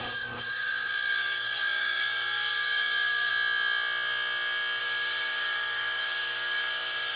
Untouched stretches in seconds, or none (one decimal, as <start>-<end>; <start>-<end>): 3.3-4.8